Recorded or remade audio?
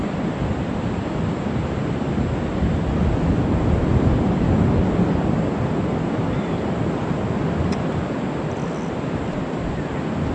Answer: recorded